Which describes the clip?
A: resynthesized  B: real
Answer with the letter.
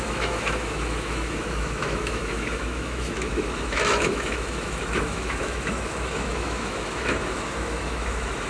A